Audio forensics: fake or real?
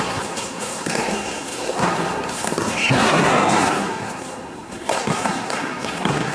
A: fake